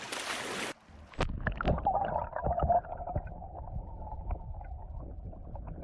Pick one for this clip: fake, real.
real